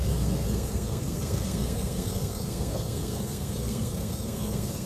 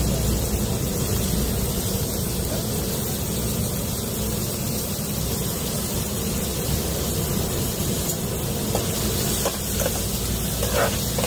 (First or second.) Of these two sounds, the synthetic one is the first